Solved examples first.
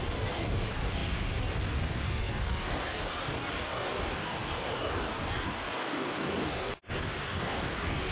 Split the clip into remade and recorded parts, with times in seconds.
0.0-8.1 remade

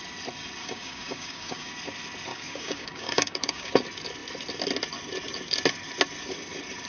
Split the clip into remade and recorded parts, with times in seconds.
0.0-0.6 recorded; 0.6-1.7 remade; 1.7-2.3 recorded; 2.3-3.7 remade; 3.7-6.9 recorded

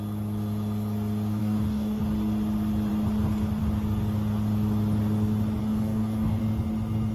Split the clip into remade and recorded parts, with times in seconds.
0.0-1.4 recorded; 1.4-2.0 remade; 2.0-5.6 recorded; 5.6-6.4 remade; 6.4-7.1 recorded

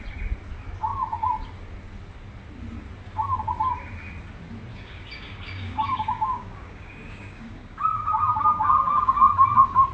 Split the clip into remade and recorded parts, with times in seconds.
0.0-4.7 recorded; 4.7-9.9 remade

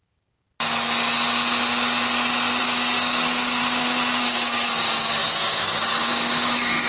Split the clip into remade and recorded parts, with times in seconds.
0.0-0.5 remade; 0.5-2.6 recorded; 2.6-3.6 remade; 3.6-4.2 recorded; 4.2-6.9 remade

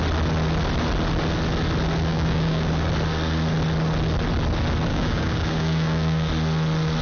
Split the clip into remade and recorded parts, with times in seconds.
0.0-2.1 recorded; 2.1-2.7 remade; 2.7-4.9 recorded; 4.9-6.3 remade; 6.3-7.0 recorded